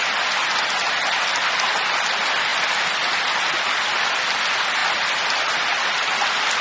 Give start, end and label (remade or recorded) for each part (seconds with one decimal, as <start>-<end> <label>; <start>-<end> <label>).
0.0-2.5 recorded; 2.5-3.7 remade; 3.7-4.8 recorded; 4.8-5.9 remade; 5.9-6.6 recorded

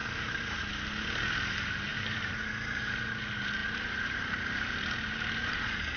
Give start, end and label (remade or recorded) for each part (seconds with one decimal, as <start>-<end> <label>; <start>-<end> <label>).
0.0-0.6 remade; 0.6-1.9 recorded; 1.9-2.5 remade; 2.5-3.6 recorded; 3.6-4.7 remade; 4.7-6.0 recorded

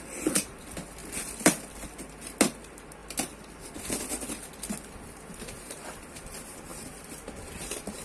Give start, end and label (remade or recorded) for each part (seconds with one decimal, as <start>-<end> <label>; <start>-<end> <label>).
0.0-1.0 recorded; 1.0-1.6 remade; 1.6-8.0 recorded

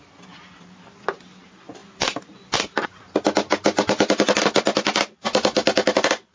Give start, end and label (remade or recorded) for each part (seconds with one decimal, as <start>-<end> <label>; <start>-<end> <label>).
0.0-1.8 recorded; 1.8-3.1 remade; 3.1-6.3 recorded

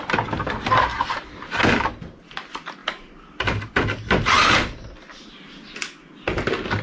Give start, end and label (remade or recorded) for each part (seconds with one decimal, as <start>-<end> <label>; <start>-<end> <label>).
0.0-6.8 recorded

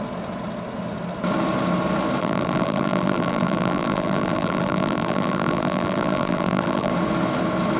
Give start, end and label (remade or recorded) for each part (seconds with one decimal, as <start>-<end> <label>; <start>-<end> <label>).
0.0-2.2 recorded; 2.2-6.9 remade; 6.9-7.8 recorded

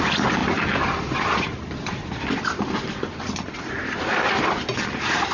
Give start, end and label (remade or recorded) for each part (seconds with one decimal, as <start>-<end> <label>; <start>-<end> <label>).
0.0-0.4 recorded; 0.4-2.2 remade; 2.2-5.3 recorded

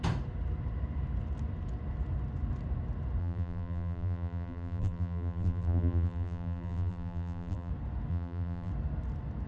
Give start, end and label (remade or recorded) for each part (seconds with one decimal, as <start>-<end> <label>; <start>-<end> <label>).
0.0-3.2 recorded; 3.2-7.7 remade; 7.7-8.1 recorded; 8.1-8.7 remade; 8.7-9.5 recorded